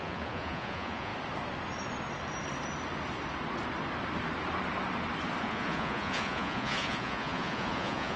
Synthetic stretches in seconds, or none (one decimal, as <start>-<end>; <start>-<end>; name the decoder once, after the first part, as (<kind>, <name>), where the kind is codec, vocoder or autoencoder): 0.0-1.1 (vocoder, Vocos); 5.4-8.2